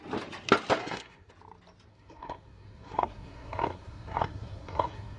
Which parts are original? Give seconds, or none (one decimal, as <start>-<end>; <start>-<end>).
0.0-0.8; 1.3-1.9